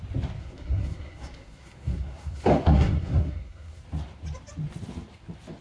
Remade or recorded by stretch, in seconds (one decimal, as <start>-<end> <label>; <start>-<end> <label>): 0.0-0.4 recorded; 0.4-3.8 remade; 3.8-5.6 recorded